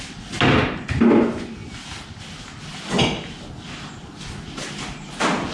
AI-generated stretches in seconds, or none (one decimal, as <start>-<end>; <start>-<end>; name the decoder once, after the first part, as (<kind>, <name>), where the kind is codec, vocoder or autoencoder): none

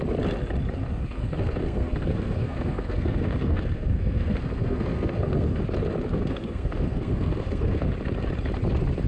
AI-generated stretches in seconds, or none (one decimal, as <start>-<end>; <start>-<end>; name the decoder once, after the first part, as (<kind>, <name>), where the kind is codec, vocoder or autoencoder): 1.2-5.6 (codec, SNAC); 6.1-7.9

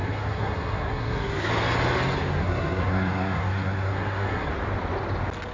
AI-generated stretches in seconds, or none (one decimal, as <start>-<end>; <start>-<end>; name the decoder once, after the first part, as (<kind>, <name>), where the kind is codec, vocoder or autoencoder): 0.0-1.5 (codec, SNAC); 2.4-4.5

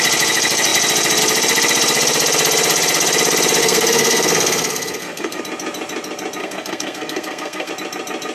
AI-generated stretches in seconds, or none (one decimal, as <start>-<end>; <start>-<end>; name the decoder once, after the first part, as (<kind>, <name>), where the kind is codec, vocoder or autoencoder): 3.6-5.4 (codec, SNAC); 6.4-7.7

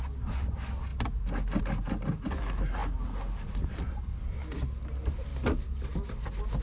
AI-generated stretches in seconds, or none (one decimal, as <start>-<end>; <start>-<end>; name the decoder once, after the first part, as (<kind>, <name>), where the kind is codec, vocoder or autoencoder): none